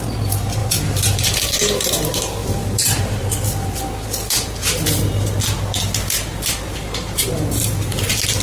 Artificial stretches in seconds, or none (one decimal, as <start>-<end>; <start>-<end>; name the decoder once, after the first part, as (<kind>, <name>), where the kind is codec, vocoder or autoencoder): 0.6-1.9 (vocoder, BigVGAN v2); 2.4-3.3; 7.0-7.8